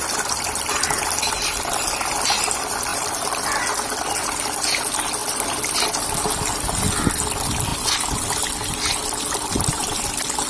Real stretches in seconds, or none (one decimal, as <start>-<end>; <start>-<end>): 0.0-2.9; 3.6-5.2; 5.7-10.5